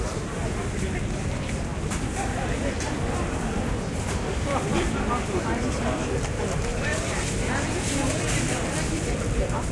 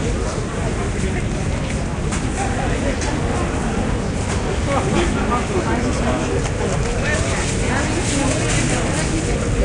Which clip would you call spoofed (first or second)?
first